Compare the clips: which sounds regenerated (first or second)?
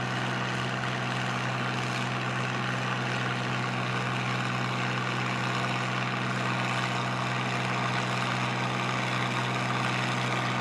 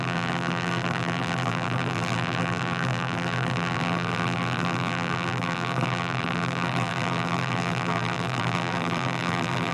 second